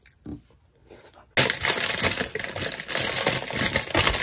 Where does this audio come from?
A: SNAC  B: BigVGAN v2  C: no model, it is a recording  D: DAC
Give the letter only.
C